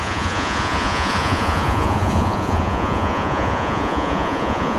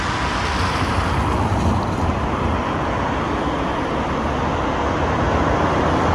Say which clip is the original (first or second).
second